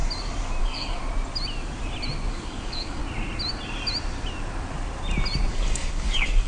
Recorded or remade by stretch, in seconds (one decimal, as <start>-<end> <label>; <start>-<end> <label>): 0.0-0.6 recorded; 0.6-1.0 remade; 1.0-2.3 recorded; 2.3-3.0 remade; 3.0-5.5 recorded; 5.5-6.5 remade